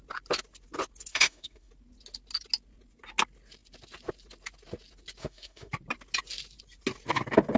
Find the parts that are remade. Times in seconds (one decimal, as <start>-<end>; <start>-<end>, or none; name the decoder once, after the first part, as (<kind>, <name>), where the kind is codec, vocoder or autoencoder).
1.1-1.7 (autoencoder, DAC-VAE); 5.2-5.7